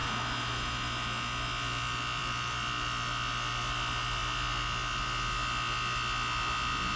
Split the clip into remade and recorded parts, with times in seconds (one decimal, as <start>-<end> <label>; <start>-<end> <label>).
0.0-7.0 recorded